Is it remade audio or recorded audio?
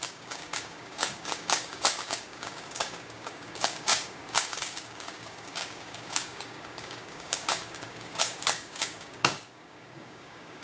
remade